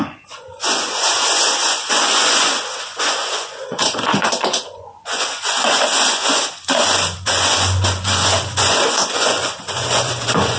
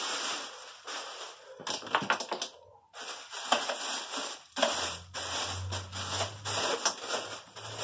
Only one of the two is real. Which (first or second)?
second